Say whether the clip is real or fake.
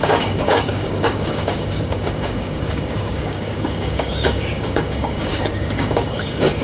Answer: fake